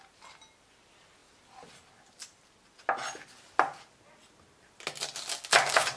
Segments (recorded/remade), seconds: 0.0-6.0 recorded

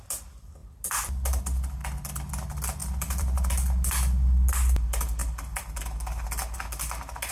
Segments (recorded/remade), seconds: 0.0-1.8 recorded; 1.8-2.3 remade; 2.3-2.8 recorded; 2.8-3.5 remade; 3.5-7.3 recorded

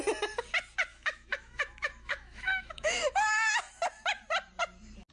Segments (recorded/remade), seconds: 0.0-0.9 recorded; 0.9-3.6 remade; 3.6-5.1 recorded